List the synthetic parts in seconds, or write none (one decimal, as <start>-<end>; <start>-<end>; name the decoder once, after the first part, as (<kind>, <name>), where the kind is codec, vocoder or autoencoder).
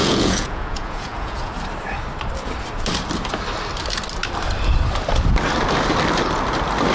0.0-1.5 (vocoder, Vocos)